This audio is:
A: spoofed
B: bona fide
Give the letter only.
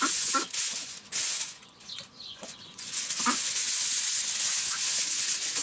A